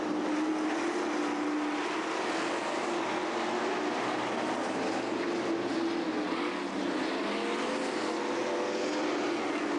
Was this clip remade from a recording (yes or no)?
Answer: no